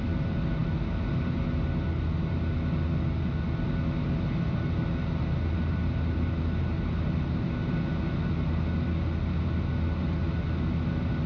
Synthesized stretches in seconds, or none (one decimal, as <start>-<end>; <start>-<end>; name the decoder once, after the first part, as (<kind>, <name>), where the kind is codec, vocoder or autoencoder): none